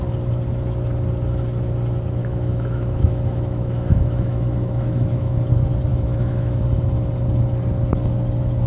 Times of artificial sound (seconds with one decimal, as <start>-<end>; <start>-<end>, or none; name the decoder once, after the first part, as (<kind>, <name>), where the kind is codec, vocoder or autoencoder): 2.2-5.4 (autoencoder, DAC-VAE); 5.9-6.6